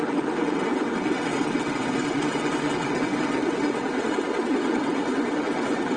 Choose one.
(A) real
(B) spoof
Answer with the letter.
B